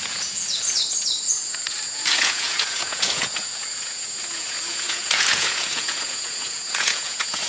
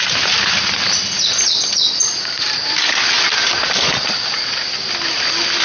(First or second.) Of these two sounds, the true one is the second